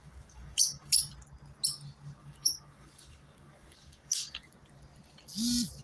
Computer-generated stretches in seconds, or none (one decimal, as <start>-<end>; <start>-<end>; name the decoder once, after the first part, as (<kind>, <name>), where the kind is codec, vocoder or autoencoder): 0.0-1.0 (codec, DAC); 2.2-4.5